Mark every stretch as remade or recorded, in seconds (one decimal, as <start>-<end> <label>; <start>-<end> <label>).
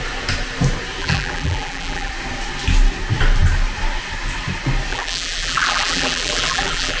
0.0-1.0 recorded; 1.0-2.1 remade; 2.1-4.9 recorded; 4.9-7.0 remade